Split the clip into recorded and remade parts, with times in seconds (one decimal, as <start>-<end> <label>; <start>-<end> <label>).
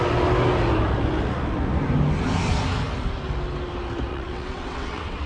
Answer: 0.0-4.1 recorded; 4.1-5.3 remade